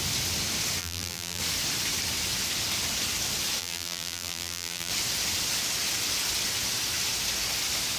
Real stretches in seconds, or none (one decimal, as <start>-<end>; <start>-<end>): 0.0-0.8; 1.4-3.6; 4.9-8.0